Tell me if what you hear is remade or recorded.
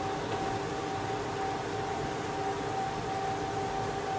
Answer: recorded